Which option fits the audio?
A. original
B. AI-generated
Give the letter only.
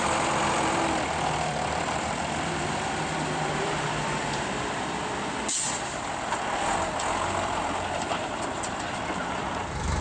B